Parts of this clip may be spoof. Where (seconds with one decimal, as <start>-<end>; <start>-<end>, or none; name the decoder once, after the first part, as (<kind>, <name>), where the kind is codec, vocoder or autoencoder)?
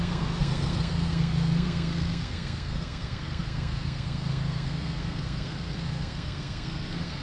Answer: 0.0-7.2 (codec, SNAC)